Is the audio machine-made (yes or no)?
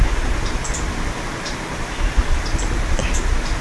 no